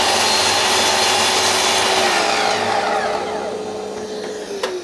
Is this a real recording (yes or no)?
yes